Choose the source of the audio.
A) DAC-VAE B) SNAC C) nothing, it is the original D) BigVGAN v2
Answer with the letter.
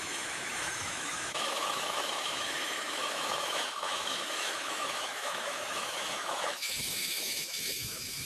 A